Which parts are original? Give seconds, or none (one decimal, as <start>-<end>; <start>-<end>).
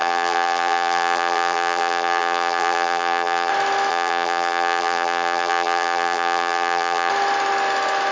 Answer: 3.5-3.9; 7.1-8.1